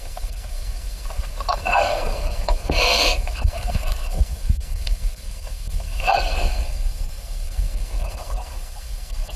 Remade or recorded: remade